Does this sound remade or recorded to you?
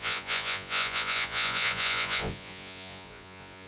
remade